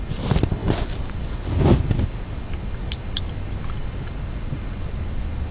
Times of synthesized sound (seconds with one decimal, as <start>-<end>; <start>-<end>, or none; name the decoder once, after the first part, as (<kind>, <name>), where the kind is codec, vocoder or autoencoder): none